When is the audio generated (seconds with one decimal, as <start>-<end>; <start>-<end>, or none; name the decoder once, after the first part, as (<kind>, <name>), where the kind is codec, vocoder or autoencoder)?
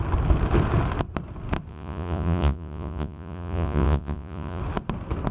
1.7-4.6 (vocoder, Vocos)